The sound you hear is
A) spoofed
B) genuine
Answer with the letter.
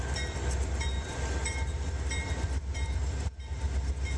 A